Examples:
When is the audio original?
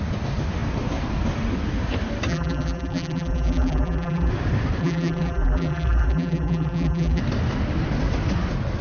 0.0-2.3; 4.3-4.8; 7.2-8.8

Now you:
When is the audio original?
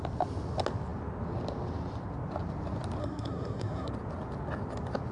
0.0-3.0; 3.9-5.1